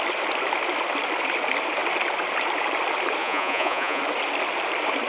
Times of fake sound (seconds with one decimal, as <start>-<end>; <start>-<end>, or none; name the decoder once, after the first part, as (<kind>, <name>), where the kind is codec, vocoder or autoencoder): 3.2-4.0 (vocoder, Vocos)